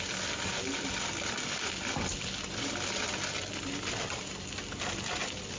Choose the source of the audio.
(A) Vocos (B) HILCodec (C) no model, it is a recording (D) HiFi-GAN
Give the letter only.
C